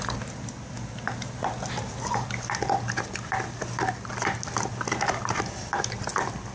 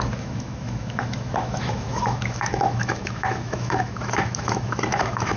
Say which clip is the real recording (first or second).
first